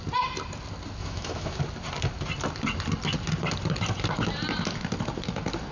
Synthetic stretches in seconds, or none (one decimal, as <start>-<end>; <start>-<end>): 1.0-1.6